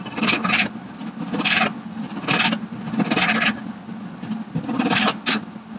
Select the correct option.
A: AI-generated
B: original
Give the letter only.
B